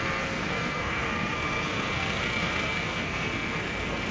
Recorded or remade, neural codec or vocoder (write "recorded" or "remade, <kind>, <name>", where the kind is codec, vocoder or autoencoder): remade, codec, SNAC